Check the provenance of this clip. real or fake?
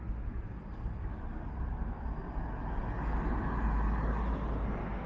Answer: real